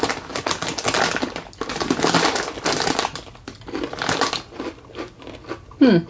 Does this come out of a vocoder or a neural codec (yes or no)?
no